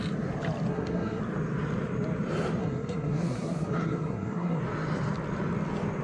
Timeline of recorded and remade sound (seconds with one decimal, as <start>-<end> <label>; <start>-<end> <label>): 0.0-0.7 recorded; 0.7-1.2 remade; 1.2-2.6 recorded; 2.6-4.6 remade; 4.6-6.0 recorded